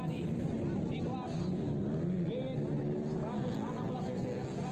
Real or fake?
real